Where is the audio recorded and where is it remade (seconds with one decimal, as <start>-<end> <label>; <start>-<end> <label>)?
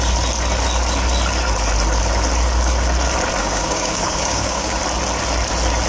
0.0-3.4 recorded; 3.4-4.8 remade; 4.8-5.9 recorded